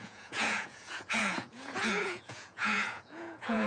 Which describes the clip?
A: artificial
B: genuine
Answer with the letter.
A